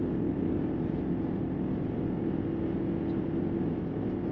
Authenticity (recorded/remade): recorded